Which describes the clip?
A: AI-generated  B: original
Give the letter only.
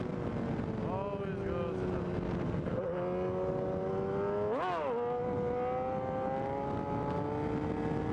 B